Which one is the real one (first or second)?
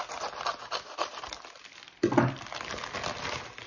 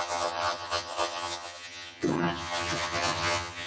first